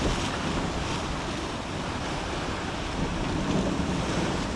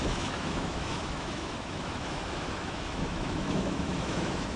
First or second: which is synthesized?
second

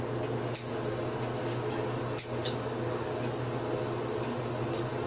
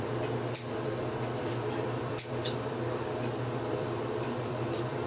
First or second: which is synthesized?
second